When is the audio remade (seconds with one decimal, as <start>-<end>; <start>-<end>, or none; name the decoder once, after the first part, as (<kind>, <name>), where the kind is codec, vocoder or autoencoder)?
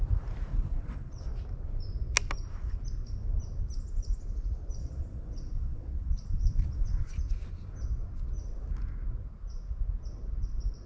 0.5-1.2 (vocoder, WaveNeXt); 4.8-7.0